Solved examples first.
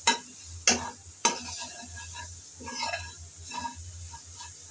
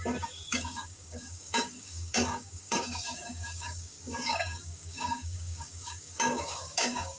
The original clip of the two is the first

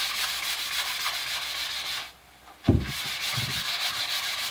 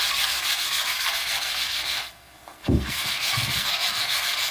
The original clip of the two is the first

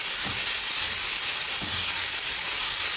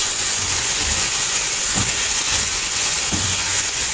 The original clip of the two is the first